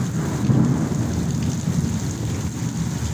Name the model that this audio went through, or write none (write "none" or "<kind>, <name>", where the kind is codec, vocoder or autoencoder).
none